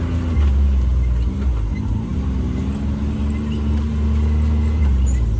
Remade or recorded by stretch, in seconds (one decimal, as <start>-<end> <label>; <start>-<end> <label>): 0.0-5.4 recorded